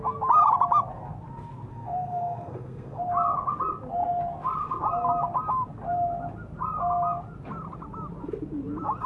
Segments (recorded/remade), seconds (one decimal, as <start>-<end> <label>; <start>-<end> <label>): 0.0-1.7 recorded; 1.7-3.0 remade; 3.0-9.1 recorded